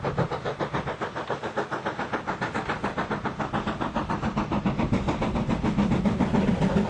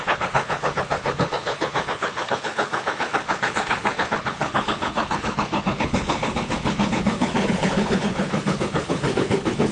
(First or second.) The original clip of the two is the first